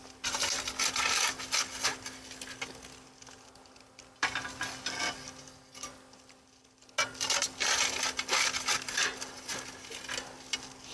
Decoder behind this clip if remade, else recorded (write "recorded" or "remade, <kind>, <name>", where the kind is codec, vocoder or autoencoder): recorded